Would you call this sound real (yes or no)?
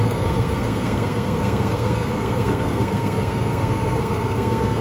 no